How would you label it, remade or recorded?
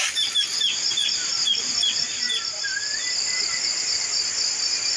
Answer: recorded